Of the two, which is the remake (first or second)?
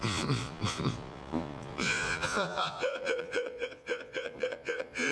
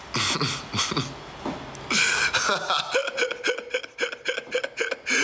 first